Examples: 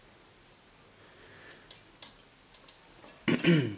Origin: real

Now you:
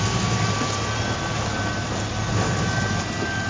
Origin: real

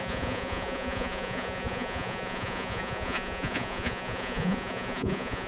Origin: fake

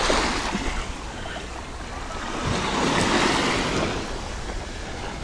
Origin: real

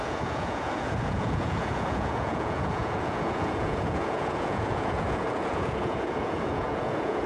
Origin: fake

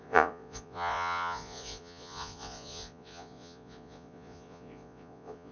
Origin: fake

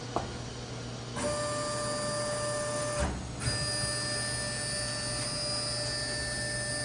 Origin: real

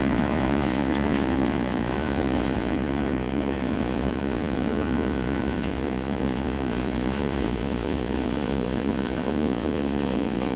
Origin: fake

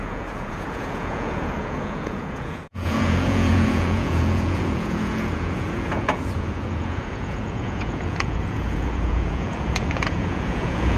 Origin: fake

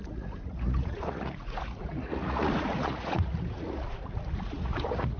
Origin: fake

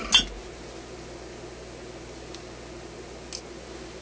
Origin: real